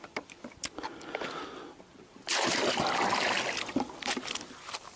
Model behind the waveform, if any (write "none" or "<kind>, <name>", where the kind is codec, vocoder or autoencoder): none